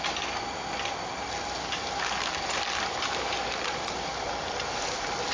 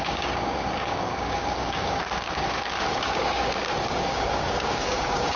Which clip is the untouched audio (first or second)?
first